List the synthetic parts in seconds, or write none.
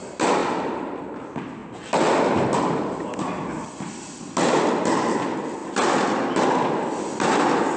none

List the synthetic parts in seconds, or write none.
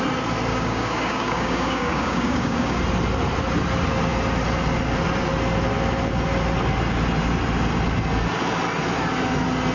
0.5-2.8 (codec, DAC)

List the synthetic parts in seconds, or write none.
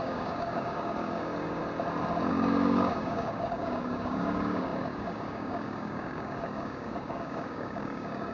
0.0-1.6 (codec, DAC); 2.3-8.3